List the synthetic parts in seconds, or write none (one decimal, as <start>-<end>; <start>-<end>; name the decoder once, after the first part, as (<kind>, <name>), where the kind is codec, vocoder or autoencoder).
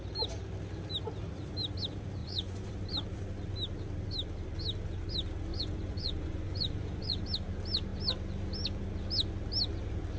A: 2.2-2.7 (vocoder, Vocos); 5.5-7.2